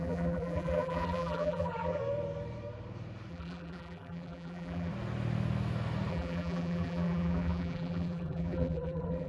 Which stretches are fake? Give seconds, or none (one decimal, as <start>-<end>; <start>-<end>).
0.0-2.0; 3.3-4.9; 6.1-9.3